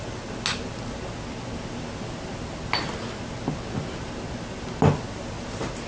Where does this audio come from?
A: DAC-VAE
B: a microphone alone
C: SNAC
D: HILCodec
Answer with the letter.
B